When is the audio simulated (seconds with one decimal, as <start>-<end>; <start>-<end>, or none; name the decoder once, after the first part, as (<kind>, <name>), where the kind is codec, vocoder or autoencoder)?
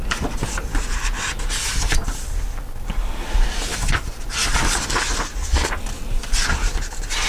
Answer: none